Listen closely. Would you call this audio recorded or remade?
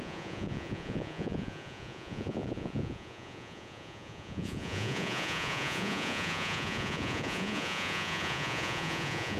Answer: remade